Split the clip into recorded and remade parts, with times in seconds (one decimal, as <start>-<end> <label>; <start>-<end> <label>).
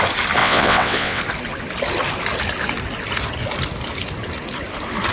0.0-0.4 recorded; 0.4-1.2 remade; 1.2-5.1 recorded